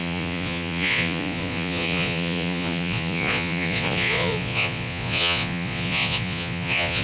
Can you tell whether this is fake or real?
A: fake